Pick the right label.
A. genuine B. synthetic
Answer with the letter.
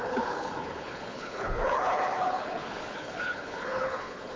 B